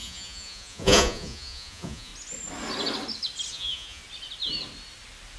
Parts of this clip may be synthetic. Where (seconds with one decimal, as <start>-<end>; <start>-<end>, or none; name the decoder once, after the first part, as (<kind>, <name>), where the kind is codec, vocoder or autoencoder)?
0.0-2.1 (vocoder, Vocos); 3.5-4.0